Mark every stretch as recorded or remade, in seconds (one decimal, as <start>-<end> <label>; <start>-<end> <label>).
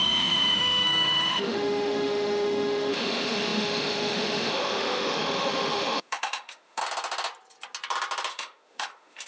0.0-6.8 remade; 6.8-8.3 recorded; 8.3-9.3 remade